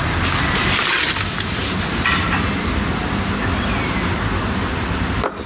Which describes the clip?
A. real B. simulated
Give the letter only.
A